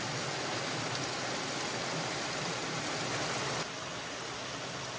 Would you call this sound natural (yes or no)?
yes